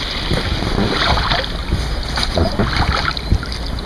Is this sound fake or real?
real